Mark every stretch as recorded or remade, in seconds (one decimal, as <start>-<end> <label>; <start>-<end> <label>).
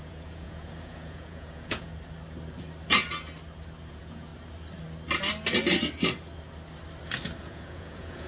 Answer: 0.0-1.9 remade; 1.9-3.9 recorded; 3.9-4.3 remade; 4.3-7.4 recorded; 7.4-8.3 remade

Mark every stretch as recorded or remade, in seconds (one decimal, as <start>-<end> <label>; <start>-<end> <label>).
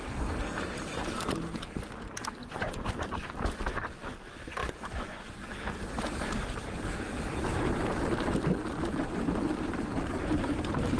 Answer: 0.0-2.4 recorded; 2.4-2.9 remade; 2.9-4.6 recorded; 4.6-5.4 remade; 5.4-11.0 recorded